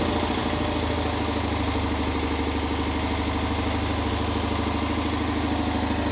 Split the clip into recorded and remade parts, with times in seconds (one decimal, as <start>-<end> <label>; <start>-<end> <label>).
0.0-6.1 recorded